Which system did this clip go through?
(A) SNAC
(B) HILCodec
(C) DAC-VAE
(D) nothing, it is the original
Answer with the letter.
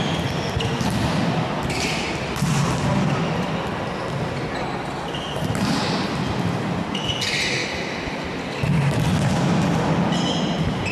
D